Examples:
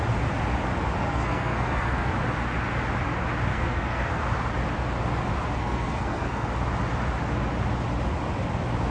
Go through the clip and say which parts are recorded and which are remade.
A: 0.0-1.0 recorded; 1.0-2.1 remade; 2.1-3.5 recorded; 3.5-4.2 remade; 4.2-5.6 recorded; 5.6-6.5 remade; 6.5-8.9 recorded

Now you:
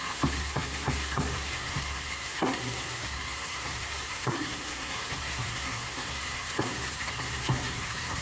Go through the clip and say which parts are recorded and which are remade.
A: 0.0-8.2 remade

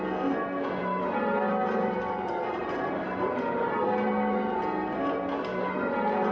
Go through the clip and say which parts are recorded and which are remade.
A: 0.0-0.8 recorded; 0.8-4.6 remade; 4.6-5.5 recorded; 5.5-6.3 remade

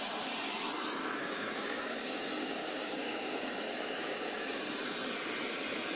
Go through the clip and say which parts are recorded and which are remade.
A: 0.0-1.0 recorded; 1.0-4.6 remade; 4.6-6.0 recorded